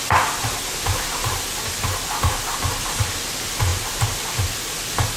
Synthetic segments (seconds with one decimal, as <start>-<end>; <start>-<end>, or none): none